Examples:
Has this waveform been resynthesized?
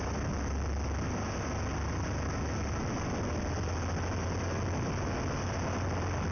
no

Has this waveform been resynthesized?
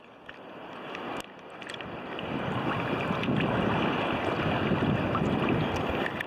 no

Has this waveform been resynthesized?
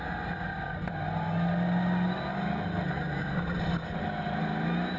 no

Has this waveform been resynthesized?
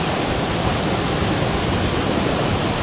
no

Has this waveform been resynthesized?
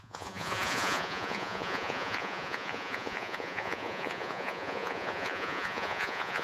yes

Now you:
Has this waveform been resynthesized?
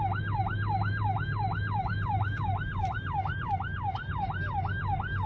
no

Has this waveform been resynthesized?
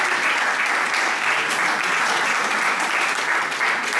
no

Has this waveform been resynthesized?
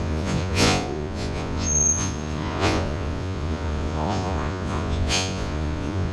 yes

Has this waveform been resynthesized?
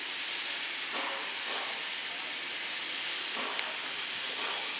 no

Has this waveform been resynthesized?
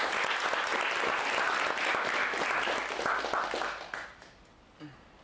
no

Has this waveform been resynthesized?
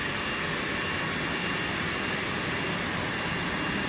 no